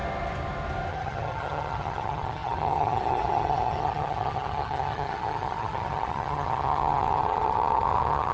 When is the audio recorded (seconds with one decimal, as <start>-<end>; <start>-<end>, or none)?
0.0-0.9